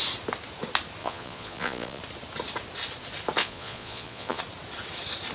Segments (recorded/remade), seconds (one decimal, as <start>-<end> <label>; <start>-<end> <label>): 0.0-1.0 recorded; 1.0-2.0 remade; 2.0-3.4 recorded; 3.4-4.4 remade; 4.4-5.3 recorded